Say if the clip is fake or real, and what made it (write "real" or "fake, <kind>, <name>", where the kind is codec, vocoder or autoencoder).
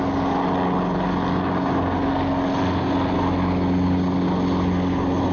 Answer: real